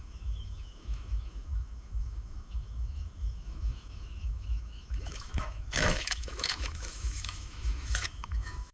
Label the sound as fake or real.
fake